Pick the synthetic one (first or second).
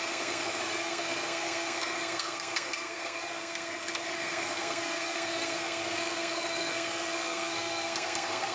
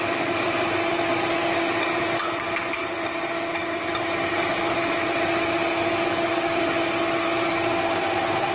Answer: first